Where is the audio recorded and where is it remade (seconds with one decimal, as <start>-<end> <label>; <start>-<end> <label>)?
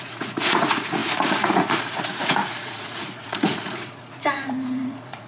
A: 0.0-5.3 remade